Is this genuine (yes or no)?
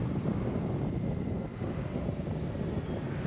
yes